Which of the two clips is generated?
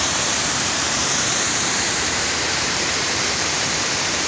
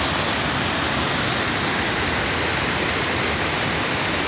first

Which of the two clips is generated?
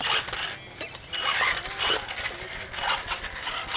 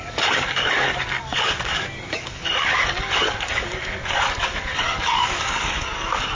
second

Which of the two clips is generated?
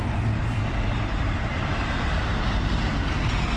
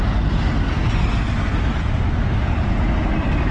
first